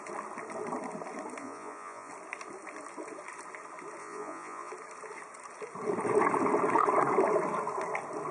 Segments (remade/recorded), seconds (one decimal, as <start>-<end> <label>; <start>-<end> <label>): 0.0-1.4 recorded; 1.4-2.1 remade; 2.1-4.0 recorded; 4.0-4.7 remade; 4.7-8.3 recorded